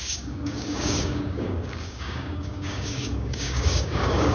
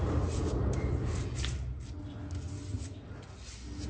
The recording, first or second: second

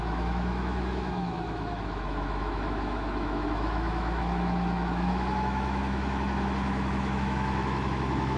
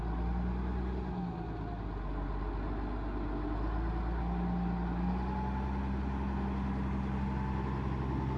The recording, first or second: second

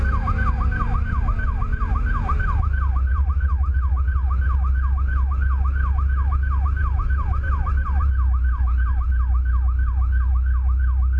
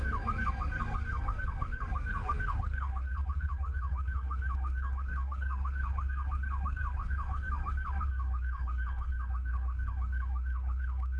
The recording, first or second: first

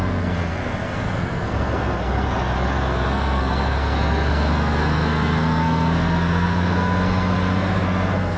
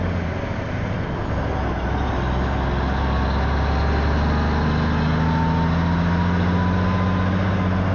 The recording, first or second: second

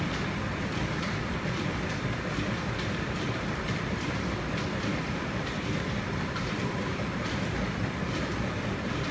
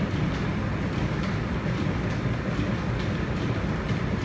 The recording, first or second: second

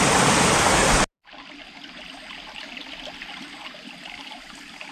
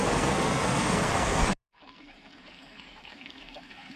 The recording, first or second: first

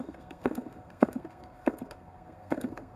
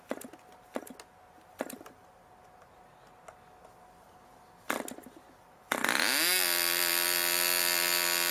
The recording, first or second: second